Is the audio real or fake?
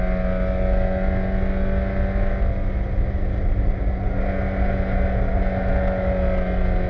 real